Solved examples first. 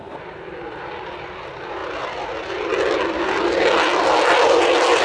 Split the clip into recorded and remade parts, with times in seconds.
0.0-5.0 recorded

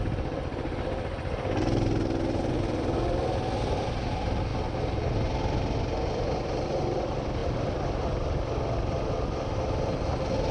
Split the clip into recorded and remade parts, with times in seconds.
0.0-10.5 recorded

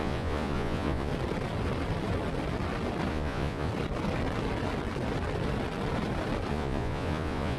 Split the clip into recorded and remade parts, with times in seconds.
0.0-1.1 remade; 1.1-3.1 recorded; 3.1-3.7 remade; 3.7-6.5 recorded; 6.5-7.6 remade

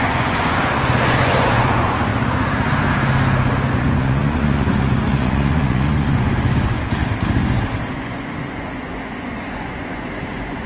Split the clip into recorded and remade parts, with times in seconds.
0.0-2.1 remade; 2.1-3.7 recorded; 3.7-7.0 remade; 7.0-7.9 recorded; 7.9-10.7 remade

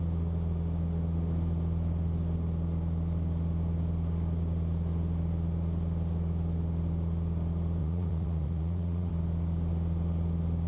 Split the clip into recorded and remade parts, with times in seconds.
0.0-7.8 recorded; 7.8-9.1 remade; 9.1-10.7 recorded

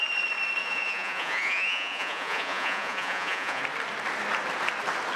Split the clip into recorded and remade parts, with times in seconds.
0.0-0.6 recorded; 0.6-3.6 remade; 3.6-5.2 recorded

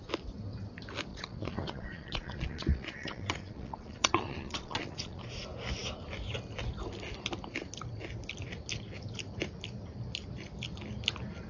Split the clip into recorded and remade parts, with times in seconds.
0.0-1.1 recorded; 1.1-5.2 remade; 5.2-11.5 recorded